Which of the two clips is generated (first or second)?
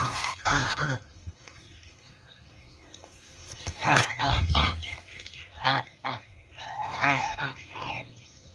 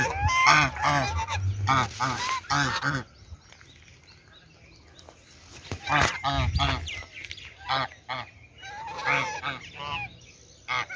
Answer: first